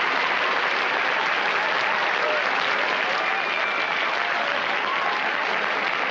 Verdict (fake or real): real